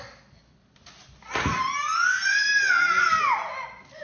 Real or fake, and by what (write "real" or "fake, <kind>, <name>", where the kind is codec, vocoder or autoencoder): real